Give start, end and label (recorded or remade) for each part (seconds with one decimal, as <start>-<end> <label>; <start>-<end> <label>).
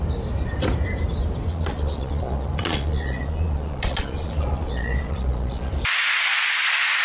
0.0-1.5 recorded; 1.5-5.7 remade; 5.7-7.0 recorded